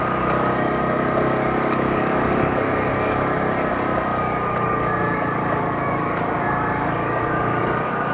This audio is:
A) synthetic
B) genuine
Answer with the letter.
A